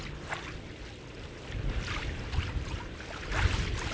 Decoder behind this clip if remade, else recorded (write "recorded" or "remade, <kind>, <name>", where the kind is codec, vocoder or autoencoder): recorded